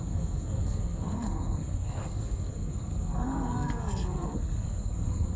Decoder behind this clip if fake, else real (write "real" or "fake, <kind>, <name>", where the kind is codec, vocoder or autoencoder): fake, codec, SNAC